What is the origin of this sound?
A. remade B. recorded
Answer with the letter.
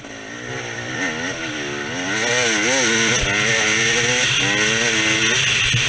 B